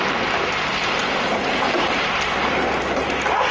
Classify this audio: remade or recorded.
recorded